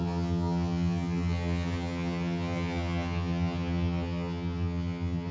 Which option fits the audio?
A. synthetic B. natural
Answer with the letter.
A